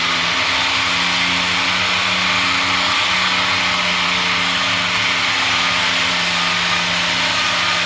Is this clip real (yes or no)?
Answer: yes